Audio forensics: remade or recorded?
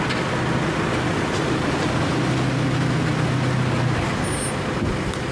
recorded